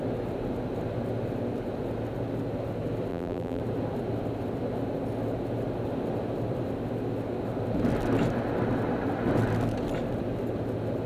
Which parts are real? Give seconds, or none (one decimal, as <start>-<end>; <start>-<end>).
0.0-3.1; 3.6-11.1